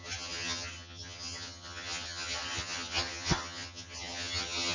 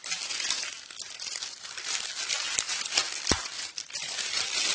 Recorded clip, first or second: second